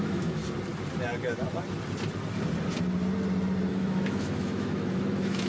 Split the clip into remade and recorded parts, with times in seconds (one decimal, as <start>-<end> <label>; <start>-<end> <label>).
0.0-0.4 remade; 0.4-3.7 recorded; 3.7-5.5 remade